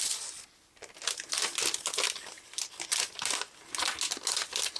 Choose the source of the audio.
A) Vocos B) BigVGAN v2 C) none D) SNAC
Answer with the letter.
C